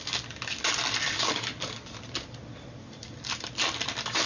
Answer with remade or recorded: recorded